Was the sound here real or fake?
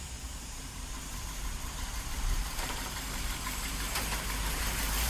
fake